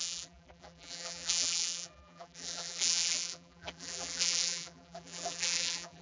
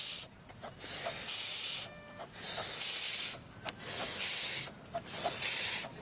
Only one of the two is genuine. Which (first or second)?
second